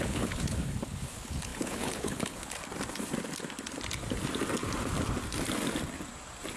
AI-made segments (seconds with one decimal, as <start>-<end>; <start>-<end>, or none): 0.0-2.6